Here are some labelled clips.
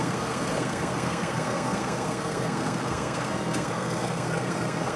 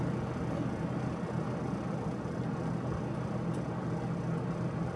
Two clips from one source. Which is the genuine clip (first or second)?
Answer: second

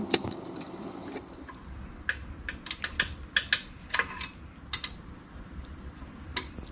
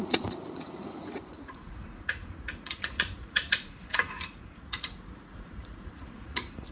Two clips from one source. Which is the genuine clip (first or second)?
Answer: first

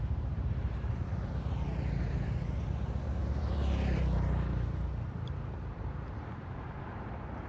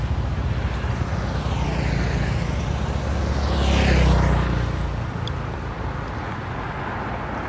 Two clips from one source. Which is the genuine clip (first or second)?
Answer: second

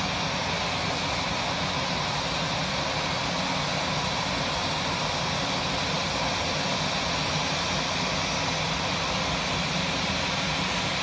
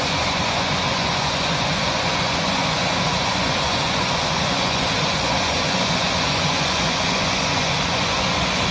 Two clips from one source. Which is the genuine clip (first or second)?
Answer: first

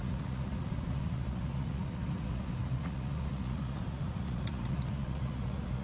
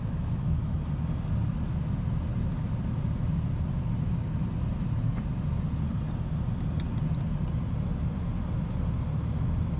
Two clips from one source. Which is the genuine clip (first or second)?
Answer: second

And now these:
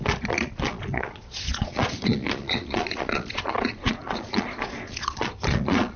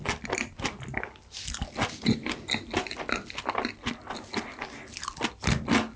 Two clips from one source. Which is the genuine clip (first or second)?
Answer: second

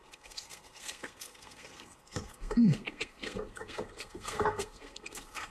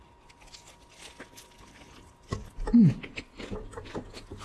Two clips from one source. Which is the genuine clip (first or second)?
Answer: second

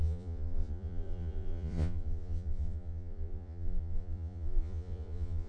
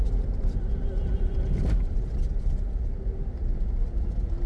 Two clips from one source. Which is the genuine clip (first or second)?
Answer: second